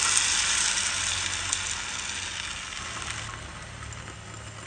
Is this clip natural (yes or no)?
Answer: yes